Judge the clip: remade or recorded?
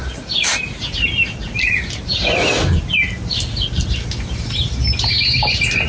recorded